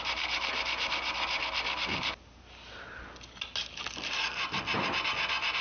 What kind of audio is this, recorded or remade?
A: recorded